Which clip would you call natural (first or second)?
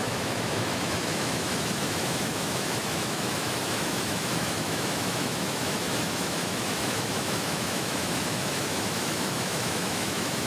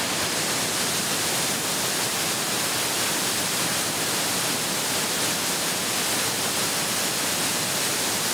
second